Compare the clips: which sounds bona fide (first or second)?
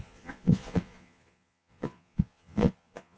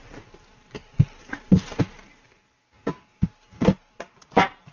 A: second